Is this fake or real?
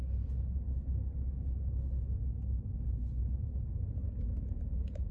real